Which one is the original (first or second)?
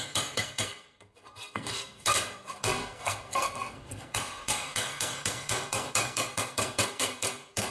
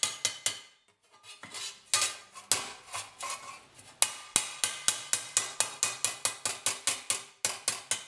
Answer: second